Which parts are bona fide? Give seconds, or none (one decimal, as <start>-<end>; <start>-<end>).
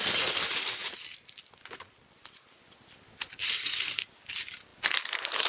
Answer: 0.0-5.5